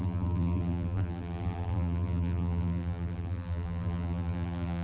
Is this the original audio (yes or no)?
no